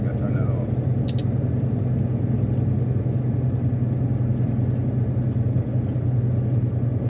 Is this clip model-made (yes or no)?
no